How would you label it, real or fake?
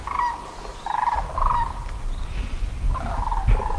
real